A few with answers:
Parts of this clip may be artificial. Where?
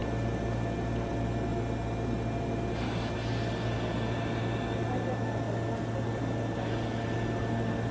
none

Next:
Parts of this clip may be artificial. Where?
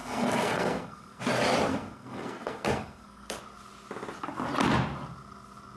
0.0-1.2 (codec, SNAC); 1.7-3.4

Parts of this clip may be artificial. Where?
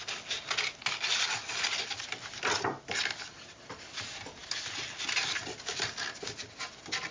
none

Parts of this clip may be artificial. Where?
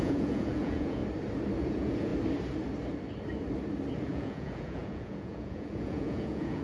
0.0-1.0 (vocoder, Vocos); 1.6-2.1; 4.1-6.6